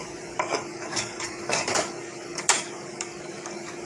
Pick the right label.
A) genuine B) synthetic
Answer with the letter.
B